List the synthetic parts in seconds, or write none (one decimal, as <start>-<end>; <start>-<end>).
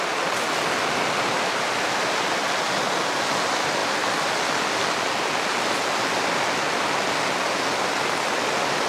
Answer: none